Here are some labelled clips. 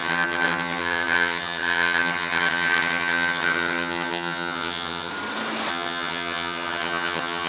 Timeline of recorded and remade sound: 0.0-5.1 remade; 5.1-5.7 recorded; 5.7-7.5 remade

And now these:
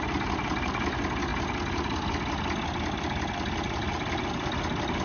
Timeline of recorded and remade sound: 0.0-5.0 recorded

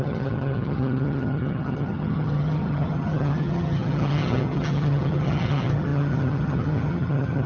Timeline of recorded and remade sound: 0.0-7.5 remade

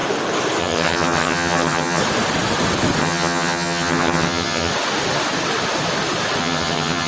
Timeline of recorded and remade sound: 0.0-0.6 recorded; 0.6-2.0 remade; 2.0-3.0 recorded; 3.0-4.7 remade; 4.7-6.4 recorded; 6.4-7.1 remade

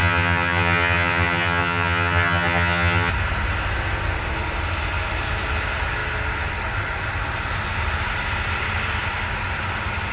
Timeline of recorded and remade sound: 0.0-3.1 remade; 3.1-10.1 recorded